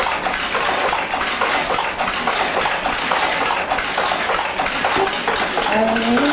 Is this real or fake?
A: real